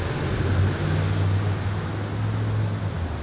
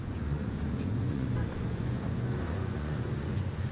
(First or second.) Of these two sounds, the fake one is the second